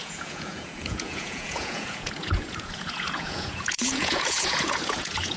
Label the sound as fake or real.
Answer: fake